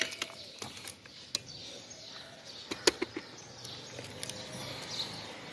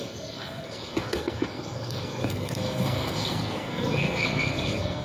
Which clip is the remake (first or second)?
second